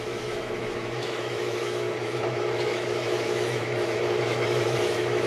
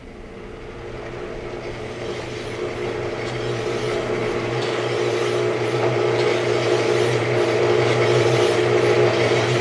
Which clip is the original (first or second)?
second